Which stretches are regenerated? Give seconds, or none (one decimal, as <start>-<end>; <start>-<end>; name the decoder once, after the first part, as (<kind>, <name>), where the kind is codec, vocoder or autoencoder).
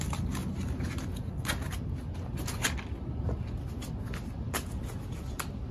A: none